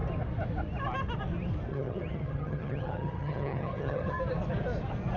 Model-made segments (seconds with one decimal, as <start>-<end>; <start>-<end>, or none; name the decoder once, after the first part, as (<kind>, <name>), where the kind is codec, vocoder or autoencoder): 1.7-4.2 (vocoder, HiFi-GAN)